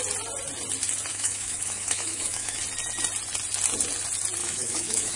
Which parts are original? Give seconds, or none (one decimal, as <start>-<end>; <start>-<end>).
0.0-1.1; 2.6-4.4